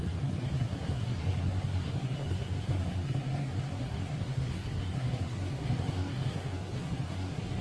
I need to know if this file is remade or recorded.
remade